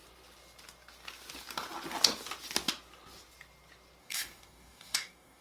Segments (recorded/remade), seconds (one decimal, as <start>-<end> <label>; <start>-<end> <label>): 0.0-4.0 recorded; 4.0-5.4 remade